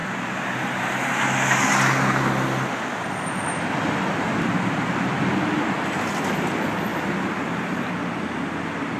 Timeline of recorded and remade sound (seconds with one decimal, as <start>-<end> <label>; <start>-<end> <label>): 0.0-1.1 remade; 1.1-6.9 recorded; 6.9-7.9 remade; 7.9-9.0 recorded